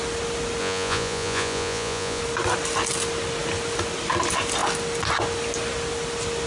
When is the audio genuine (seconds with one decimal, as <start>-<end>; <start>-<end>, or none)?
0.0-0.6; 2.2-6.5

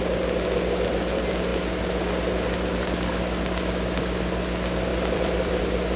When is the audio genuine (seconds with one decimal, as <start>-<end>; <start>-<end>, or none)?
0.0-4.9; 5.6-6.0

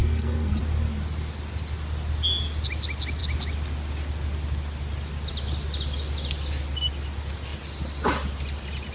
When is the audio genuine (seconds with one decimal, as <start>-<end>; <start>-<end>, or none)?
0.6-8.9

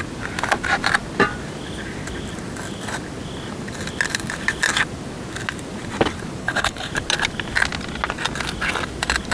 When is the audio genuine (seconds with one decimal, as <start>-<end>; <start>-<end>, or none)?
0.0-6.4; 6.9-9.3